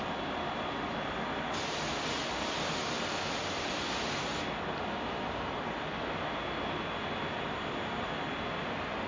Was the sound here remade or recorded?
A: recorded